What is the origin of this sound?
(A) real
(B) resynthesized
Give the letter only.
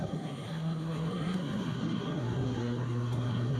B